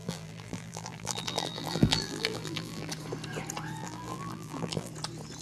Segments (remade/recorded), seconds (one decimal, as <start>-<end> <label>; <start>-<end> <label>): 0.0-2.9 remade; 2.9-3.8 recorded; 3.8-4.9 remade; 4.9-5.4 recorded